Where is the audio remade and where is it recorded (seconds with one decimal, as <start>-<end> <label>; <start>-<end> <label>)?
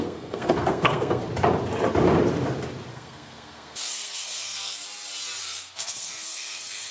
0.0-1.2 remade; 1.2-2.9 recorded; 2.9-4.8 remade; 4.8-5.4 recorded; 5.4-6.9 remade